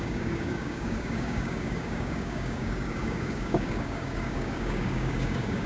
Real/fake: fake